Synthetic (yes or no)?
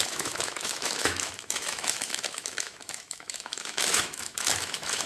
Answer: yes